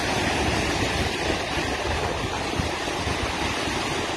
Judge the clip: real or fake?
real